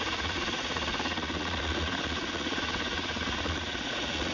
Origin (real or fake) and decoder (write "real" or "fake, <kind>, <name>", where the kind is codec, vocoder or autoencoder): fake, vocoder, Vocos